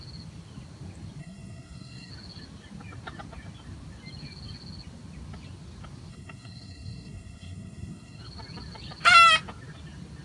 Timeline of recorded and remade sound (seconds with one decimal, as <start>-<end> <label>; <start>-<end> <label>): 0.0-1.2 recorded; 1.2-2.1 remade; 2.1-6.1 recorded; 6.1-8.2 remade; 8.2-10.2 recorded